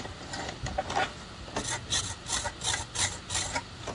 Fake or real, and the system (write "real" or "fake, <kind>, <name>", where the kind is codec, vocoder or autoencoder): real